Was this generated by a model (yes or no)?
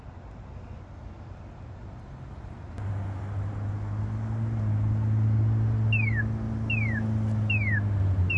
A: no